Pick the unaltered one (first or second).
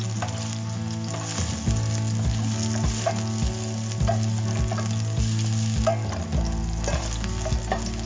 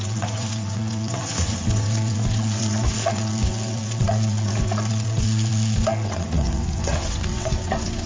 first